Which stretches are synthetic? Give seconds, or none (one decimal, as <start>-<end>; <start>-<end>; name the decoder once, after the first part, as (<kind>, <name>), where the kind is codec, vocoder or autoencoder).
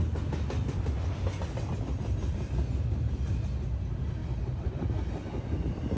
none